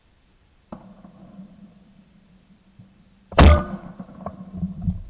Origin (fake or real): fake